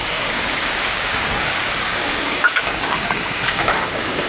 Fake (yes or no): yes